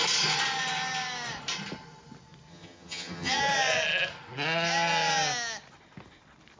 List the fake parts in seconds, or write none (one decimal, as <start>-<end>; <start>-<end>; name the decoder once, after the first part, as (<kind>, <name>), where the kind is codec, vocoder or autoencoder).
2.5-3.4 (vocoder, HiFi-GAN)